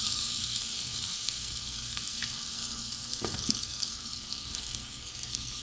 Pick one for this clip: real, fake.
fake